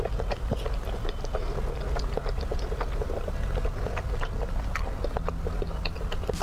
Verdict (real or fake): real